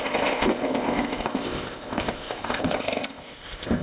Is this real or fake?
fake